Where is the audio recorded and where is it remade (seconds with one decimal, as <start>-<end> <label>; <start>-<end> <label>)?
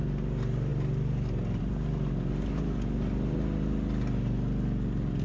0.0-5.2 recorded